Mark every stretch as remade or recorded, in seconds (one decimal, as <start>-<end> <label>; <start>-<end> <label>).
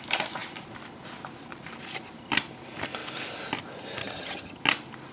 0.0-4.0 recorded; 4.0-4.6 remade; 4.6-5.1 recorded